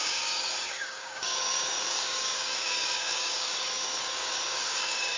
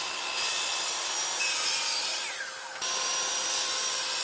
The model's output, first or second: first